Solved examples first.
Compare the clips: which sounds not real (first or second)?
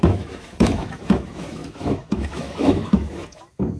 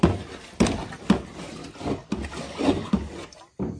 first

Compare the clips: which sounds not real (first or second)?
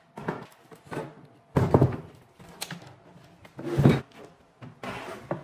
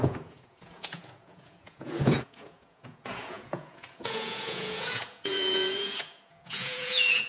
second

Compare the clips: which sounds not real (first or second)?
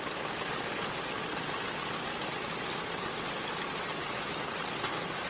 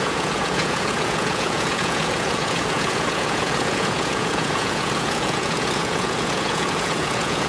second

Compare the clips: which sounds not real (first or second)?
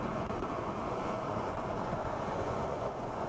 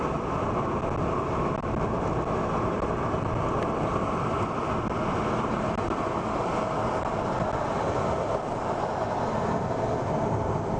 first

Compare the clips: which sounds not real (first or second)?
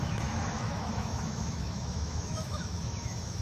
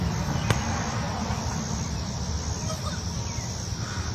first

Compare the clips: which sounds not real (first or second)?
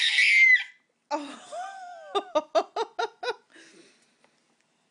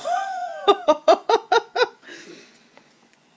second